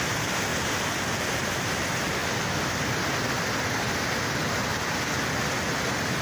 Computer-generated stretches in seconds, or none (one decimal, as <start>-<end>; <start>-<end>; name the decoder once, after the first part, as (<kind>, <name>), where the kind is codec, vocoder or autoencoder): 0.0-2.2 (vocoder, BigVGAN v2); 3.7-4.7; 5.4-6.2